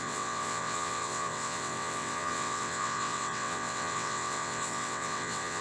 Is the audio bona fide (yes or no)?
no